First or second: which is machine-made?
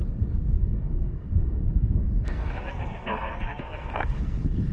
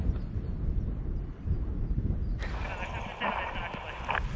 first